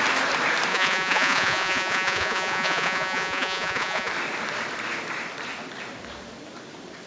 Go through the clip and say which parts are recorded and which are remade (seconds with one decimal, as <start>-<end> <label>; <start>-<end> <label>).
0.0-0.7 recorded; 0.7-4.1 remade; 4.1-7.1 recorded